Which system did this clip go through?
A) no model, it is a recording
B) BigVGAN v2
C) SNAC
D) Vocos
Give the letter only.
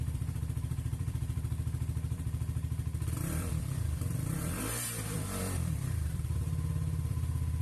B